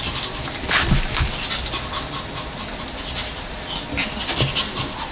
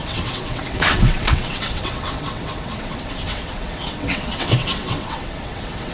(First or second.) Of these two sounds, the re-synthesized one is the second